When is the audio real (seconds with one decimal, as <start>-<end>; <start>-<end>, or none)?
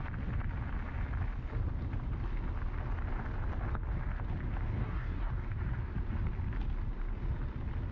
0.0-4.8; 5.3-7.9